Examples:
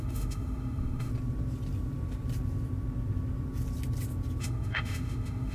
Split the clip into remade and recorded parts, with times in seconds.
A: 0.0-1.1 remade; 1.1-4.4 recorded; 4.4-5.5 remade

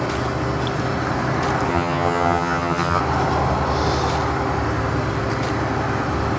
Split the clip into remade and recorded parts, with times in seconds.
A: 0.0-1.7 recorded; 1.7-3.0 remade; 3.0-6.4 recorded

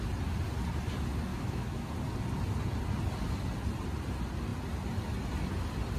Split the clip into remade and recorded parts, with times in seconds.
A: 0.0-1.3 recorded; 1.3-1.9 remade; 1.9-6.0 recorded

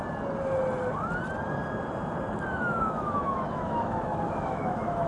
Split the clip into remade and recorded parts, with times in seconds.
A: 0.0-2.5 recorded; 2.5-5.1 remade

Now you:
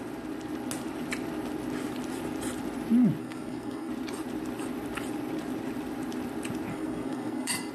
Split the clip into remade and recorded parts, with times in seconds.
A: 0.0-3.2 recorded; 3.2-3.9 remade; 3.9-6.7 recorded; 6.7-7.7 remade

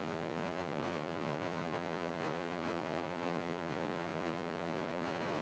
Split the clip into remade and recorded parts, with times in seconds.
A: 0.0-5.4 remade

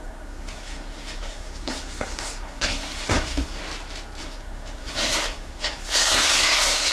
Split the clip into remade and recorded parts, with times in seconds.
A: 0.0-3.6 remade; 3.6-4.2 recorded; 4.2-6.9 remade